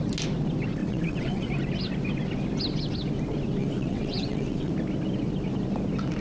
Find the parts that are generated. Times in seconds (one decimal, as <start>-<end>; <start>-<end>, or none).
0.8-1.5; 3.6-4.7